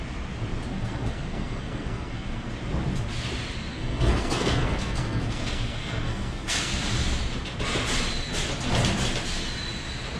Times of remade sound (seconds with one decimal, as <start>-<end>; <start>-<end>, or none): 0.7-2.5; 3.7-6.8